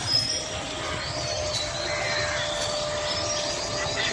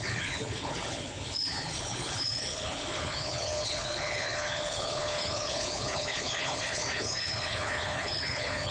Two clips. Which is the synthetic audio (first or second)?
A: second